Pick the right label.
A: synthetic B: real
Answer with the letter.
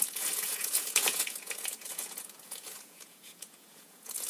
A